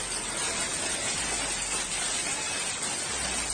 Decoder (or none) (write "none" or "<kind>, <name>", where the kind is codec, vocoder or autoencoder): none